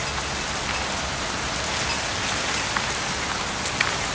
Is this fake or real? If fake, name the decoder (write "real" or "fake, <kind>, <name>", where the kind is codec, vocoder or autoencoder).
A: real